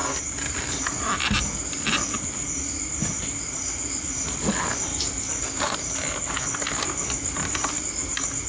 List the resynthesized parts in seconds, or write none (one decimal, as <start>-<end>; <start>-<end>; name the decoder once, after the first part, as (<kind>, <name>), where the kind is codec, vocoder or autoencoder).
none